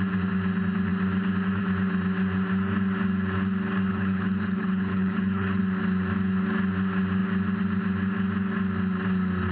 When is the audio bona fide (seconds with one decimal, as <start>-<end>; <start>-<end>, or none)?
0.0-3.9; 5.6-9.5

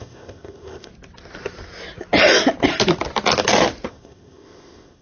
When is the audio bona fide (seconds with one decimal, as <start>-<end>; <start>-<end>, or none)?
0.9-3.9

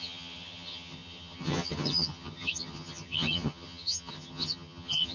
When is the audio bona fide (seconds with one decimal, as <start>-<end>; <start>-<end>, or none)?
none

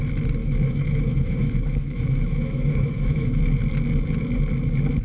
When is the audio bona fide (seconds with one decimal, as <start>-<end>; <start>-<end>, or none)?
0.0-0.4; 3.4-5.0

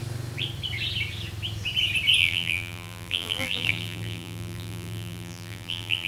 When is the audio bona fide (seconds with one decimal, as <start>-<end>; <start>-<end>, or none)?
0.0-2.2

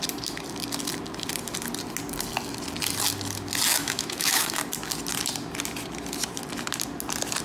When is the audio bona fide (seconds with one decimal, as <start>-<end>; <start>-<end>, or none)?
0.0-3.7; 4.6-7.4